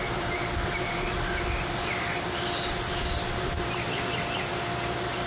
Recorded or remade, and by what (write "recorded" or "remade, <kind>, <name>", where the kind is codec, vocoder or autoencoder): recorded